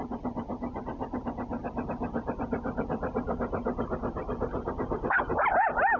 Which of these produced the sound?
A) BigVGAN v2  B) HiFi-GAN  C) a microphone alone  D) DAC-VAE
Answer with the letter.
C